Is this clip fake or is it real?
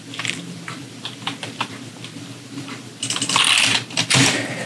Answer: fake